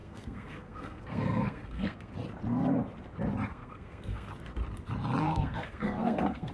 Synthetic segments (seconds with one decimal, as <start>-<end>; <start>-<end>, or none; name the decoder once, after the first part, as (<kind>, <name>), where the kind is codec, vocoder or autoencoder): 0.0-2.1 (codec, SNAC); 3.5-4.3; 5.2-6.5